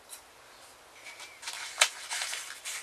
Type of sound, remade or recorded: recorded